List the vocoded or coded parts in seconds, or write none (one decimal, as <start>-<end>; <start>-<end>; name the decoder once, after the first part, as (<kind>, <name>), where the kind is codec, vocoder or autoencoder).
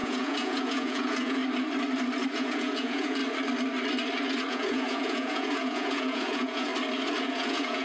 0.0-1.4 (vocoder, Vocos); 2.3-3.2; 4.5-6.7; 7.2-7.8